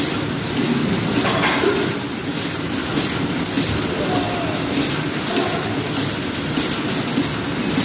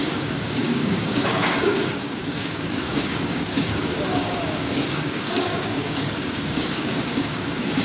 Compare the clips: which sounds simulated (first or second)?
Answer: second